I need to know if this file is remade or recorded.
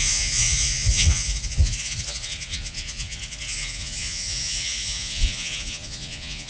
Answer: remade